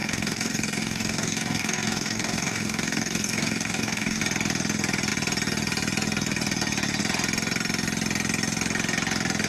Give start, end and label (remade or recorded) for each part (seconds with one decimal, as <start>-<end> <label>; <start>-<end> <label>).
0.0-4.2 remade; 4.2-9.5 recorded